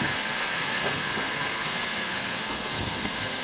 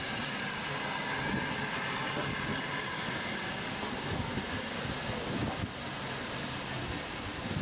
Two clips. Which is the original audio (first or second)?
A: second